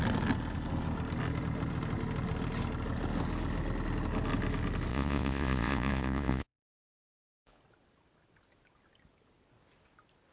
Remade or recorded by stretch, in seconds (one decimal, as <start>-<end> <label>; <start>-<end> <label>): 0.0-4.9 recorded; 4.9-7.6 remade; 7.6-10.3 recorded